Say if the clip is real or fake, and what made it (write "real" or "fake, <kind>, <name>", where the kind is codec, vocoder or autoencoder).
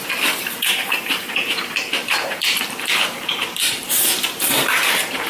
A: fake, vocoder, BigVGAN v2